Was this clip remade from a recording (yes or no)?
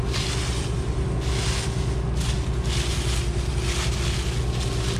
no